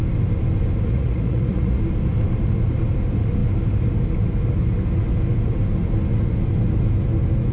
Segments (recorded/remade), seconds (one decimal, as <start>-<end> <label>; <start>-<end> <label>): 0.0-0.9 recorded; 0.9-1.8 remade; 1.8-7.5 recorded